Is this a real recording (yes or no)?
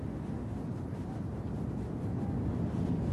yes